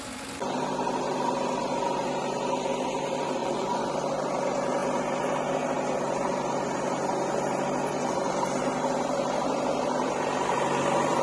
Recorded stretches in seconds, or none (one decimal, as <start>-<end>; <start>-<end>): 0.0-3.4; 3.9-11.2